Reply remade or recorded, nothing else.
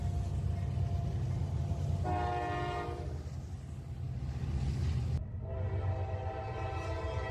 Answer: recorded